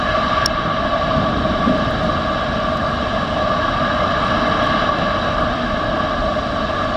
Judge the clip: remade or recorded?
recorded